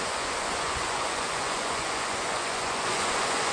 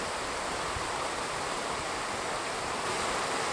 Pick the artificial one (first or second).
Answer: first